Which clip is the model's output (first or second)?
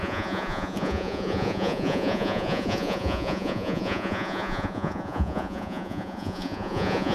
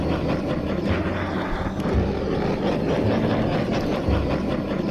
first